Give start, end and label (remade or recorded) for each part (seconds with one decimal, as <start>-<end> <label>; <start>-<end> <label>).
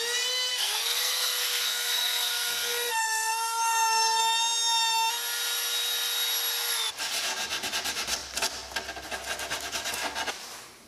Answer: 0.0-0.5 recorded; 0.5-4.2 remade; 4.2-10.9 recorded